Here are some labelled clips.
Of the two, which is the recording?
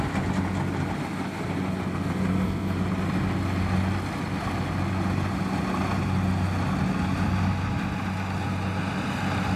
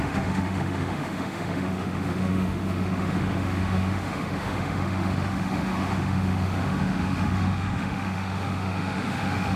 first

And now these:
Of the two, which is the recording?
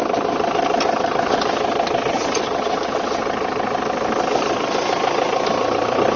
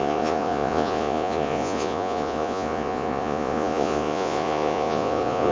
first